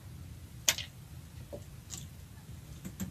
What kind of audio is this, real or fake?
real